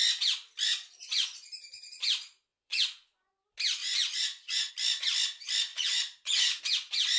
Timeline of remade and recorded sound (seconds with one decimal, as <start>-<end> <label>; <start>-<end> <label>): 0.0-2.5 recorded; 2.5-3.3 remade; 3.3-3.8 recorded; 3.8-4.7 remade; 4.7-5.7 recorded; 5.7-6.6 remade; 6.6-7.2 recorded